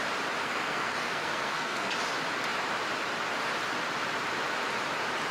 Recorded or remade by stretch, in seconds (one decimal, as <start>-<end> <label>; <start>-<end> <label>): 0.0-0.4 recorded; 0.4-1.9 remade; 1.9-5.3 recorded